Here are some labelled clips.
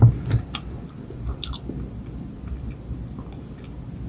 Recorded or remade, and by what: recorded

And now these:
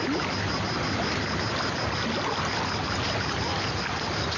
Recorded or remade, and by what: recorded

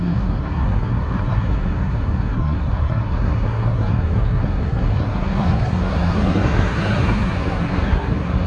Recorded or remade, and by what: remade, codec, SNAC